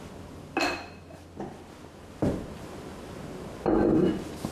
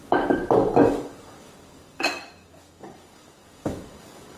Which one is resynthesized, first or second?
second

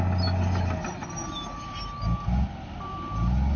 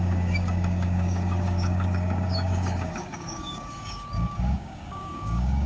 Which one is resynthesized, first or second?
second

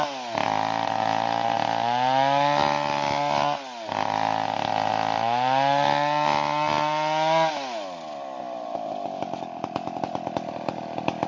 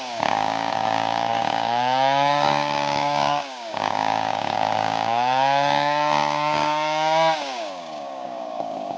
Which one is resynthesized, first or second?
second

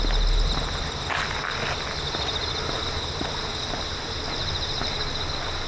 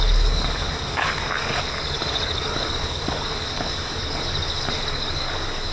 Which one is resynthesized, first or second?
second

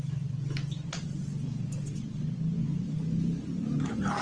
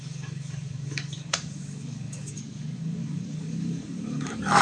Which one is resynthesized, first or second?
second